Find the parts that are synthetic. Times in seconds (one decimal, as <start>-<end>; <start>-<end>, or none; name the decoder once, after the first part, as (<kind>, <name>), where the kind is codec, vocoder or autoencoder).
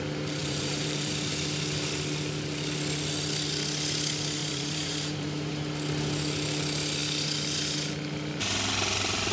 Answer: 0.4-1.1 (vocoder, BigVGAN v2); 4.4-5.5